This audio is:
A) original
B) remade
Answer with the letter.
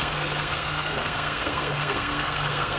B